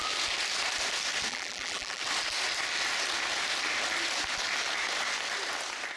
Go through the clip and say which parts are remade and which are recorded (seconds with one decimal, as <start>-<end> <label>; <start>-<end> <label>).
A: 0.0-1.3 recorded; 1.3-2.0 remade; 2.0-6.0 recorded